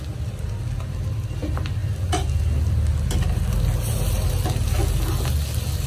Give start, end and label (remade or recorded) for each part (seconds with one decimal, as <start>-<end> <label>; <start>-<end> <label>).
0.0-5.9 recorded